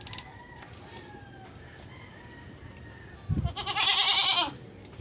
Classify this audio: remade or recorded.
recorded